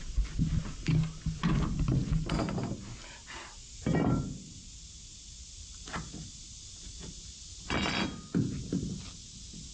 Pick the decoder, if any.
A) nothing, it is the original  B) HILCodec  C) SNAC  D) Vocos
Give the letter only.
A